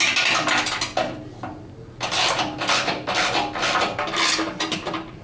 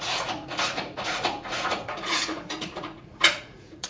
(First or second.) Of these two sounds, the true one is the first